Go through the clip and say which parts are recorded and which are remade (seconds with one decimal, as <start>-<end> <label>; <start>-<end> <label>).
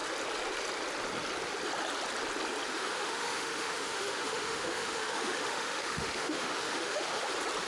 0.0-2.7 recorded; 2.7-7.3 remade; 7.3-7.7 recorded